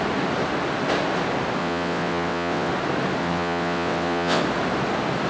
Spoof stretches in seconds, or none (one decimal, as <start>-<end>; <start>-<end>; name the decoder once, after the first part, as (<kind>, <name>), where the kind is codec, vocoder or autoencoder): 1.6-2.7 (vocoder, WaveNeXt); 3.2-4.4